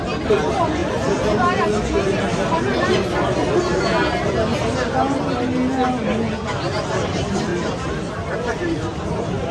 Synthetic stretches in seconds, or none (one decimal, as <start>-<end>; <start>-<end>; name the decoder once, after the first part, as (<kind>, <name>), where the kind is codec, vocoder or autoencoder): none